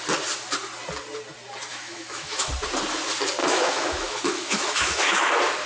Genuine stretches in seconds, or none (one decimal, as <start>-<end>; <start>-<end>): 0.0-1.7; 2.5-3.4; 5.3-5.7